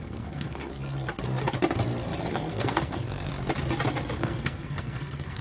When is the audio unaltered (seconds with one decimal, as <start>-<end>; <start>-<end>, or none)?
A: 0.7-2.3; 3.3-4.2